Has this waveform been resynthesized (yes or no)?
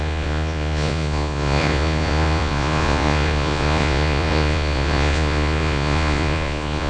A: yes